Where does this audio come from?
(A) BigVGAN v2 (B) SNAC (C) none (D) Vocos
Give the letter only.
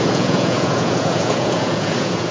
D